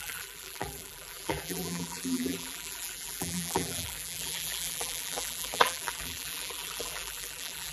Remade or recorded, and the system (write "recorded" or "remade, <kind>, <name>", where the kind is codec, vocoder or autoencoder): remade, vocoder, BigVGAN v2